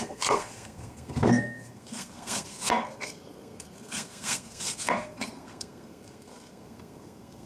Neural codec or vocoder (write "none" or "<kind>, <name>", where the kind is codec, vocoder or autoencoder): codec, SNAC